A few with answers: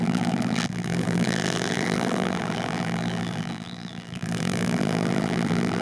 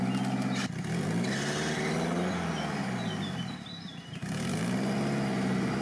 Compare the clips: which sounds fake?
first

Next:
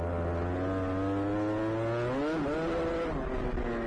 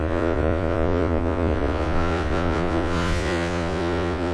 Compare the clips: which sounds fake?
second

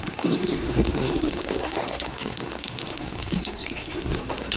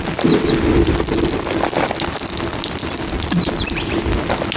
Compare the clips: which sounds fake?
first